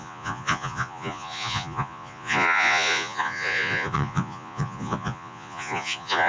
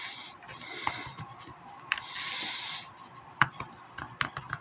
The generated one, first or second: first